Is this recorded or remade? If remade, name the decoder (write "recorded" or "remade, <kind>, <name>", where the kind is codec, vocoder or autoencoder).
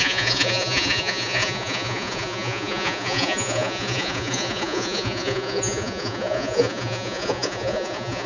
remade, vocoder, Vocos